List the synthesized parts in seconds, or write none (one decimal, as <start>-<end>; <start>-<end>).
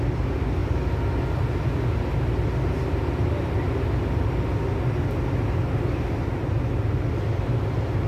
none